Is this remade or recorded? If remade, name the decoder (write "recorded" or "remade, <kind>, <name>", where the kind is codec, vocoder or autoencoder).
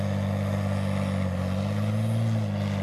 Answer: recorded